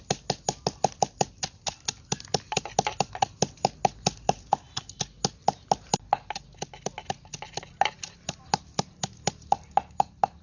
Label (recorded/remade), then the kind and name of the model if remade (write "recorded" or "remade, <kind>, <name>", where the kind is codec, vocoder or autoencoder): recorded